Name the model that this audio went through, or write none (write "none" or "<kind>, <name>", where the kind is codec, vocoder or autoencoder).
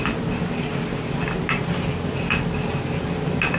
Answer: none